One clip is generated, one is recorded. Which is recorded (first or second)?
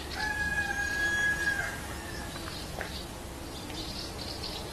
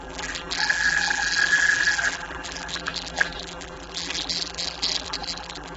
first